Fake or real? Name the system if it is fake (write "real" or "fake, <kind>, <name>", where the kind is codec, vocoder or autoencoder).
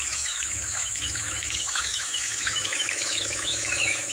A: fake, autoencoder, DAC-VAE